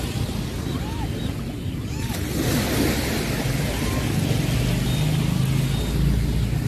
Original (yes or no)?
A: yes